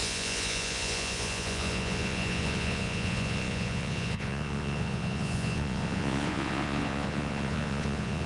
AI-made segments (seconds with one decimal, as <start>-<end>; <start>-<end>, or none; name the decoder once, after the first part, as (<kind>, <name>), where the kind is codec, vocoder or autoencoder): 0.0-8.3 (vocoder, Vocos)